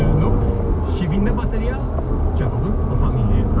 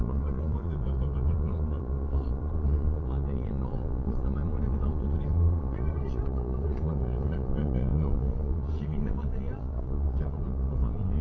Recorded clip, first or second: first